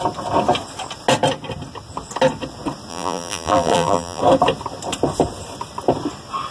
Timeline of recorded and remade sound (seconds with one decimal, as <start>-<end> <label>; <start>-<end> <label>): 0.0-2.9 recorded; 2.9-4.2 remade; 4.2-6.5 recorded